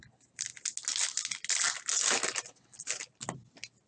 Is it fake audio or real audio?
real